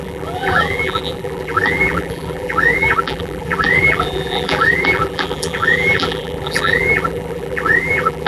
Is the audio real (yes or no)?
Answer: no